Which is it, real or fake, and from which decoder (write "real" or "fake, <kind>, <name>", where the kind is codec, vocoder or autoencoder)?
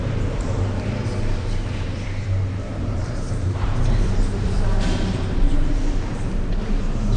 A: fake, vocoder, BigVGAN v2